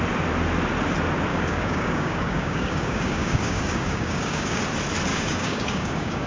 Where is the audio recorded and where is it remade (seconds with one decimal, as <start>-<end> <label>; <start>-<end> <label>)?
0.0-1.3 recorded; 1.3-4.6 remade; 4.6-5.1 recorded; 5.1-6.3 remade